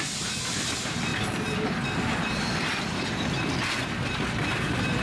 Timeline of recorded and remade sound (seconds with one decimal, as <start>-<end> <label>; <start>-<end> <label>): 0.0-5.0 recorded